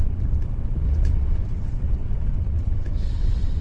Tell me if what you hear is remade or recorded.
remade